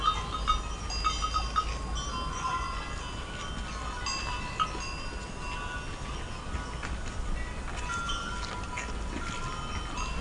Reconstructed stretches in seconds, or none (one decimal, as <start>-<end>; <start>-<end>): 2.3-2.8